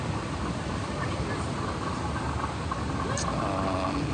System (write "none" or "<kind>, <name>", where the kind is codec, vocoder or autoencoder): none